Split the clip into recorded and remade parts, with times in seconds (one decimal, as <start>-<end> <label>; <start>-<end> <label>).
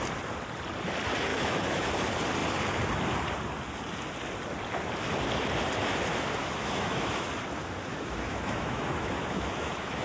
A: 0.0-1.3 recorded; 1.3-1.9 remade; 1.9-6.4 recorded; 6.4-7.3 remade; 7.3-7.9 recorded; 7.9-10.0 remade